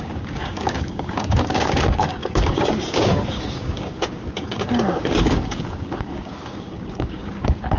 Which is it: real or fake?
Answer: fake